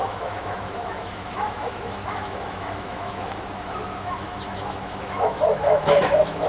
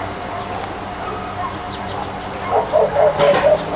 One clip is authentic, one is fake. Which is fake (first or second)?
first